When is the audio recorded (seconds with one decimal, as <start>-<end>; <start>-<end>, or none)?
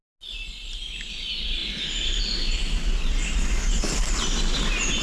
0.0-5.0